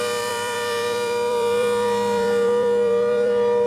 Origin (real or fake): fake